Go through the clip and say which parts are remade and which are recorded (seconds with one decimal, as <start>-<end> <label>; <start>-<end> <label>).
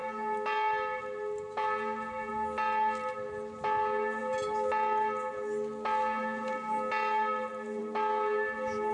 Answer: 0.0-8.9 recorded